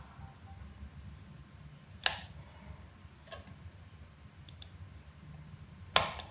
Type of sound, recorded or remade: recorded